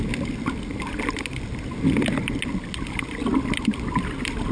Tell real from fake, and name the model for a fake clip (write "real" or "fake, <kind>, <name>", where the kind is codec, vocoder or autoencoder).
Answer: real